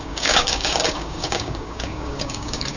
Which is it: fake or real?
fake